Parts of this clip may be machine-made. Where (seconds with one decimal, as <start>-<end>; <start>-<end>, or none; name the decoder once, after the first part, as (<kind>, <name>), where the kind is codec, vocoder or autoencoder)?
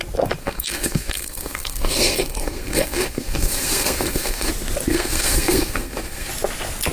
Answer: 0.4-4.5 (codec, SNAC); 4.9-6.3